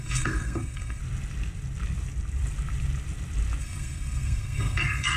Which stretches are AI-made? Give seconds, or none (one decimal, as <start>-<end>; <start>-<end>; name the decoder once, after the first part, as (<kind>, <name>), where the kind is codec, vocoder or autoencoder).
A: 0.0-1.0 (codec, SNAC); 3.6-5.2